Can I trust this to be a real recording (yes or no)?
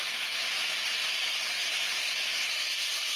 yes